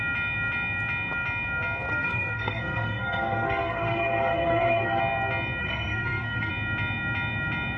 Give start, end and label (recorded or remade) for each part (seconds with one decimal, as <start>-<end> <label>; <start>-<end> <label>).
0.0-1.9 recorded; 1.9-5.0 remade; 5.0-5.6 recorded; 5.6-6.5 remade; 6.5-7.8 recorded